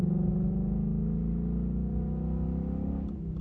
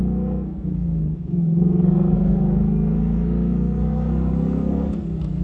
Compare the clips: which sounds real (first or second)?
first